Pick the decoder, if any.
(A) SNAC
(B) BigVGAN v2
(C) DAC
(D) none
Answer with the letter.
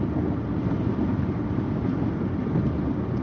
D